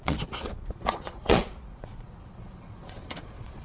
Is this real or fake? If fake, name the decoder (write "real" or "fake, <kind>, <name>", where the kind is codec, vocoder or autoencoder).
fake, vocoder, Vocos